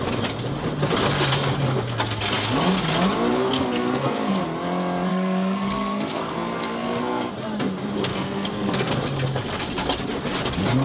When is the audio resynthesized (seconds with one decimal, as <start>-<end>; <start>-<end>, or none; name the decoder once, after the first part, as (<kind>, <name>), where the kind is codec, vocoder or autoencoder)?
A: 3.3-4.4 (codec, SNAC); 5.1-7.3; 8.1-8.9